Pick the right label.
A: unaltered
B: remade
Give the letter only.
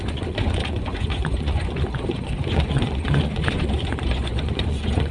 B